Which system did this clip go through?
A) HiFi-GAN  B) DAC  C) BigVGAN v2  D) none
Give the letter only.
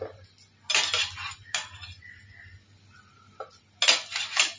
D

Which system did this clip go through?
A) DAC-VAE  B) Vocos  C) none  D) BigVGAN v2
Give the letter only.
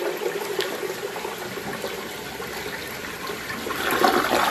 C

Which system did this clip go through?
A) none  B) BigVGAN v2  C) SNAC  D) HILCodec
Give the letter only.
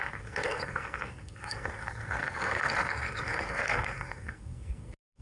C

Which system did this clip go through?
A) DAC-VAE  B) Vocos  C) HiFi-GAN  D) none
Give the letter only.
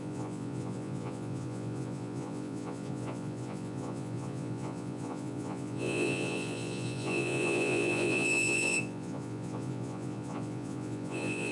B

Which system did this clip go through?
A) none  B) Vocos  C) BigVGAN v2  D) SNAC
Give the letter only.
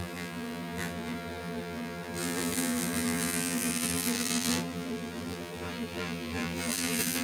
C